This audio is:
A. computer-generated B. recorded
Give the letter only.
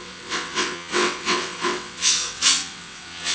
A